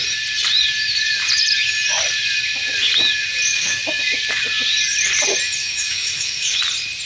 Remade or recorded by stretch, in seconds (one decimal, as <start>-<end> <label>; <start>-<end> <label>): 0.0-3.5 recorded; 3.5-4.0 remade; 4.0-5.6 recorded; 5.6-6.6 remade; 6.6-7.1 recorded